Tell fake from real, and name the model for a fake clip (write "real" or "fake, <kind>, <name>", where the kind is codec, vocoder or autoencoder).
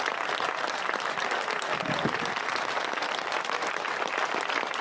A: real